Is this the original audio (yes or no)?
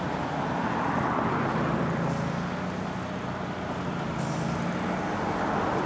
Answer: yes